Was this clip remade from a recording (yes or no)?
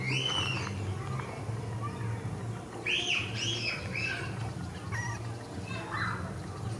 no